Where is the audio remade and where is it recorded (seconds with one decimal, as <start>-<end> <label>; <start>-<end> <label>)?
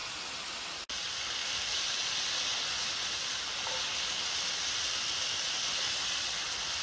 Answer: 0.0-6.8 recorded